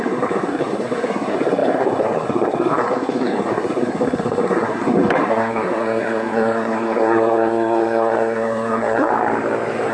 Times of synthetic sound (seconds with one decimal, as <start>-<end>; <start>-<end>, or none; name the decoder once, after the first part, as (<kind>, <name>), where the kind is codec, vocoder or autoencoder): 0.0-9.1 (codec, SNAC)